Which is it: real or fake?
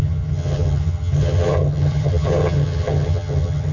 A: fake